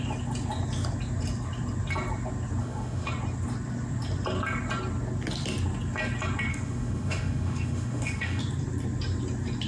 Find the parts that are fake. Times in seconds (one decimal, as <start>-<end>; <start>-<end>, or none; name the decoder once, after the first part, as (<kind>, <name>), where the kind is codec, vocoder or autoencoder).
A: 2.6-3.1 (autoencoder, DAC-VAE); 6.5-8.4